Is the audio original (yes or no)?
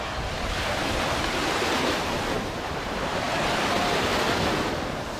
yes